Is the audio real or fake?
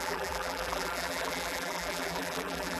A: fake